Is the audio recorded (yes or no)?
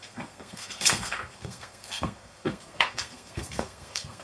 no